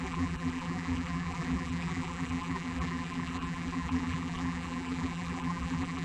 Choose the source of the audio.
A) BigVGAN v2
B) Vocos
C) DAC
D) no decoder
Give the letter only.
A